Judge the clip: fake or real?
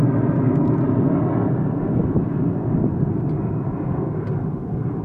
real